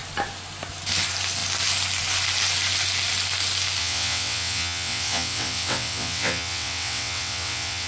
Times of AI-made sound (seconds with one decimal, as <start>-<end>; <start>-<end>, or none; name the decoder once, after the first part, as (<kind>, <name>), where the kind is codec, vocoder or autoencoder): 3.8-7.9 (vocoder, WaveNeXt)